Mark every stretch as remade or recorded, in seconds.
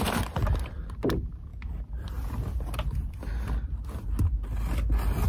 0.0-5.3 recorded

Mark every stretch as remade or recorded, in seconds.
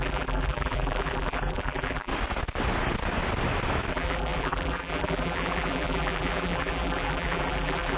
0.0-2.1 remade; 2.1-3.9 recorded; 3.9-8.0 remade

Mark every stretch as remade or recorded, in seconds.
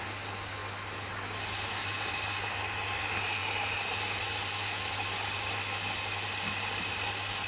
0.0-7.5 recorded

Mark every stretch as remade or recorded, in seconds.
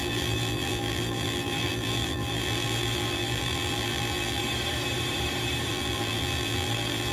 0.0-4.4 remade; 4.4-5.7 recorded; 5.7-7.1 remade